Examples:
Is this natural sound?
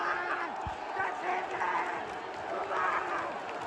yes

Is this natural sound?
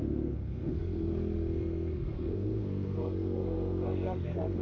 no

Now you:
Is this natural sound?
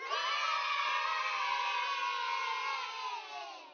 yes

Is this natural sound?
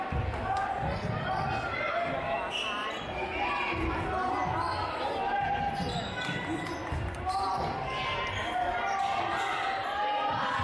yes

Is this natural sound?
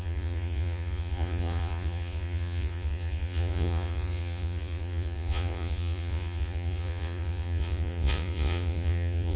no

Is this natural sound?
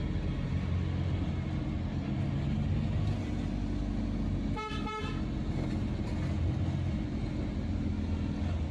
yes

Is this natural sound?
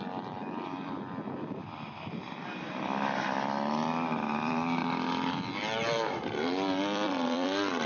no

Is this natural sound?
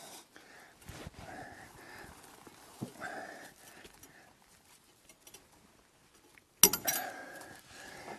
yes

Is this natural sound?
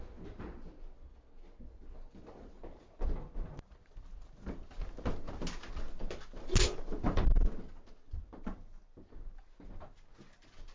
yes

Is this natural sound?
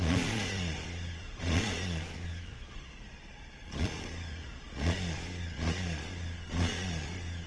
no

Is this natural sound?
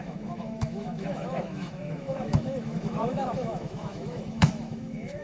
no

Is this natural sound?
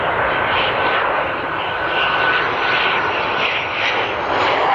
yes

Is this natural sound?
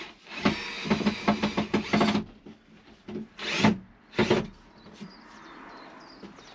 yes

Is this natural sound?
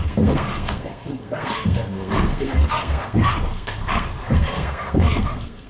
no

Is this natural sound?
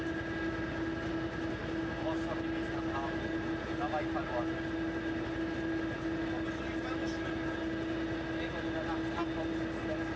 yes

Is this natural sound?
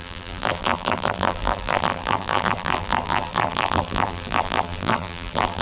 no